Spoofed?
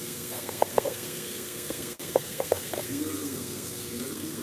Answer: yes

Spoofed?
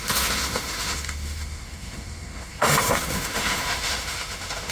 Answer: yes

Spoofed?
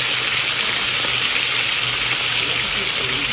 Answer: no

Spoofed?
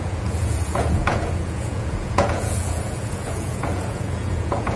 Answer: yes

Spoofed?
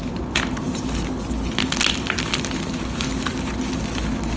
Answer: no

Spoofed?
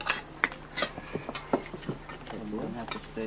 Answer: no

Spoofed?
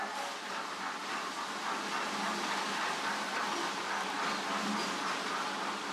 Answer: no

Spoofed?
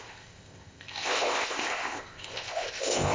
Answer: yes